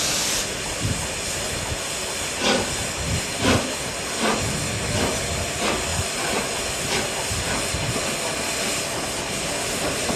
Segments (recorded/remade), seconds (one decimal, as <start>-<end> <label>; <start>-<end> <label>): 0.0-10.2 recorded